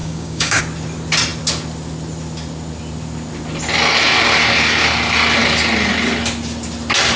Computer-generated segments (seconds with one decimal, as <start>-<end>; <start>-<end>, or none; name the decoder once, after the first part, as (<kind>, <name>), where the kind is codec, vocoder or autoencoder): 0.0-0.6 (codec, DAC)